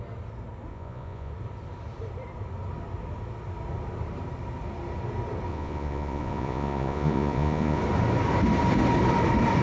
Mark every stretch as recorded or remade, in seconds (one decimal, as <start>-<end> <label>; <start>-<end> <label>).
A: 0.0-0.7 recorded; 0.7-1.3 remade; 1.3-5.5 recorded; 5.5-7.8 remade; 7.8-9.6 recorded